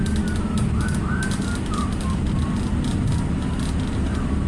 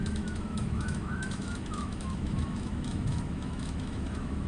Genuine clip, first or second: first